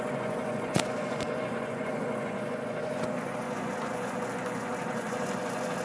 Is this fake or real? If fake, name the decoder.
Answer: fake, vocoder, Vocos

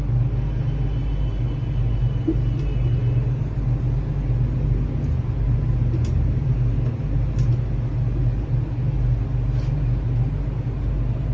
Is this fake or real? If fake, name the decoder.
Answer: real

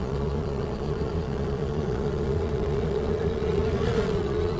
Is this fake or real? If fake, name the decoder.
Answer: fake, vocoder, Vocos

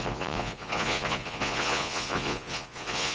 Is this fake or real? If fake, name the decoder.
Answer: fake, vocoder, Vocos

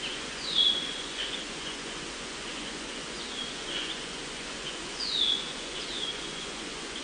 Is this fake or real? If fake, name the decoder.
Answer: fake, vocoder, Vocos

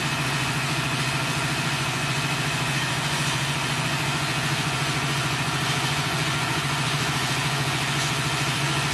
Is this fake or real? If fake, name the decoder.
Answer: fake, vocoder, Vocos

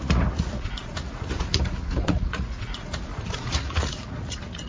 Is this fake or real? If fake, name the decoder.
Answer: fake, vocoder, Vocos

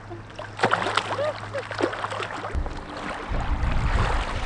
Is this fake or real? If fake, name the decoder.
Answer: real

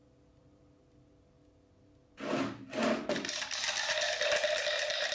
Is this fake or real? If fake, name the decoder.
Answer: real